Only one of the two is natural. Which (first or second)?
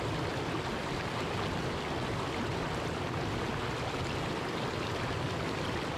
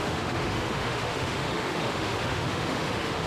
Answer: first